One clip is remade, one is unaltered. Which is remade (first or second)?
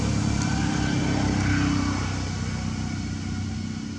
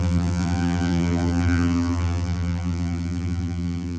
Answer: second